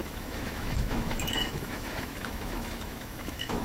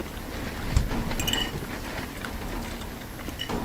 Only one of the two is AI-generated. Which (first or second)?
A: first